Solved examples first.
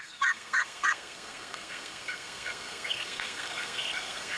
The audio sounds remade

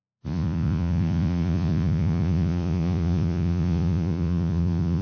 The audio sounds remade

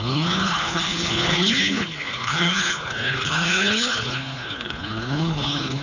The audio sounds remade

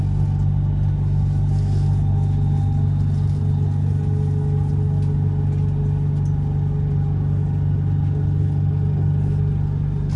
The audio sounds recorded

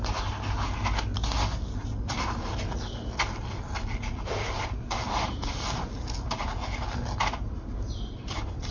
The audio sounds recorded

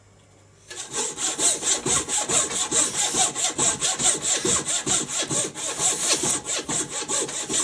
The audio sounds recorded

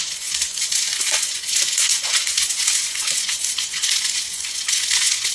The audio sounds remade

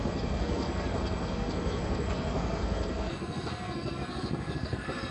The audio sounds remade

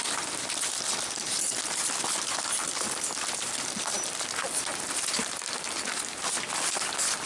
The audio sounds recorded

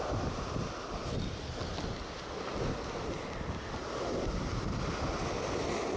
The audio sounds recorded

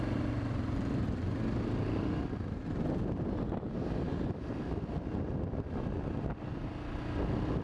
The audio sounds recorded